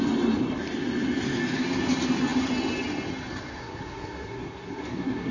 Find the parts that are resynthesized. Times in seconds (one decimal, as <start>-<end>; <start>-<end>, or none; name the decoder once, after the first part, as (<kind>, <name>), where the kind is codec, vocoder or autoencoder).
3.6-5.3 (codec, SNAC)

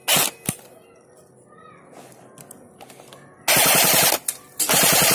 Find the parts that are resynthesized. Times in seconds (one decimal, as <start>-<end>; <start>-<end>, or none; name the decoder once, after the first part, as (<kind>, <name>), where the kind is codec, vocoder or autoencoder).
none

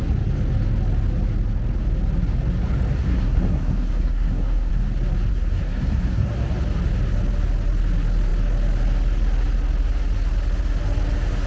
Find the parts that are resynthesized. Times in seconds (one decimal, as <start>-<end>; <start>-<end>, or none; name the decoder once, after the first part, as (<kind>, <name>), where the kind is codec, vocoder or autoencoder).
3.0-4.7 (codec, SNAC); 5.3-6.3

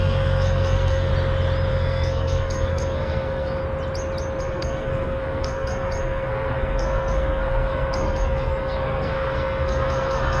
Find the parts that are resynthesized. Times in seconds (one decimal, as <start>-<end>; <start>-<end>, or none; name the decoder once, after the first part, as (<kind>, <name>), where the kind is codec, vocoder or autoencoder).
0.0-1.1 (codec, SNAC); 1.7-3.6; 4.4-10.4

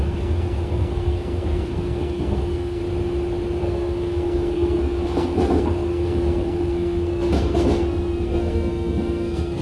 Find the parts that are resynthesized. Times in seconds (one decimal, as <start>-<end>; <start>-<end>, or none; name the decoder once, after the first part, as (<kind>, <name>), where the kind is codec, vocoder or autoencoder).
0.0-2.8 (codec, SNAC); 3.6-9.6